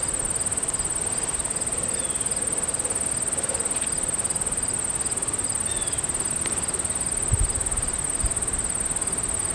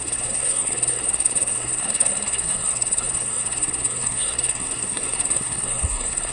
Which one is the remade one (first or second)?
second